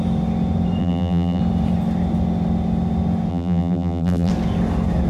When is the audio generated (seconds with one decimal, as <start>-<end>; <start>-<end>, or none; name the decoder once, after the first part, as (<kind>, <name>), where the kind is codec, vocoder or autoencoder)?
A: 0.8-1.4 (vocoder, BigVGAN v2); 3.3-4.3